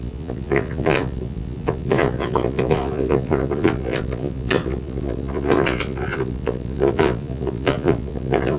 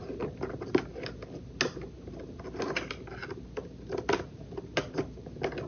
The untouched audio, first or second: second